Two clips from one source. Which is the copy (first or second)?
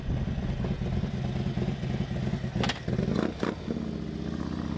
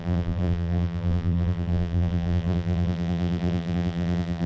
second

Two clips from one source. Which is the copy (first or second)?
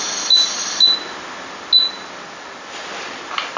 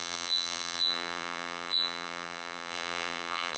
second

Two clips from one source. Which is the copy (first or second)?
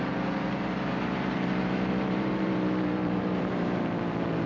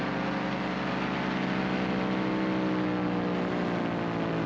first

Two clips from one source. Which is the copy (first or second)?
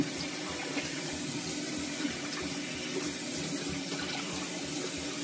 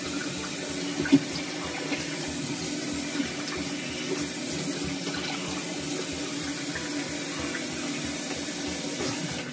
first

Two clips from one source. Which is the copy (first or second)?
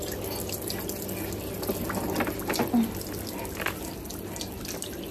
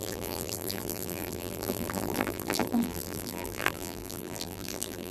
second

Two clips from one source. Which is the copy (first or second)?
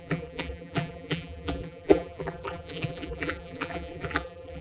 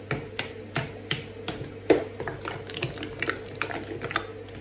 first